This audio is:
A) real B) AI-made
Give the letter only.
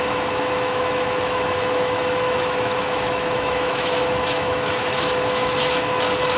B